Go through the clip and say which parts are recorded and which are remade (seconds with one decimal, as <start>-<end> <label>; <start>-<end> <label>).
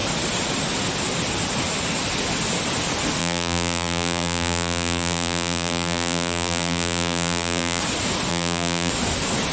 0.0-3.2 recorded; 3.2-7.8 remade; 7.8-8.3 recorded; 8.3-8.9 remade; 8.9-9.5 recorded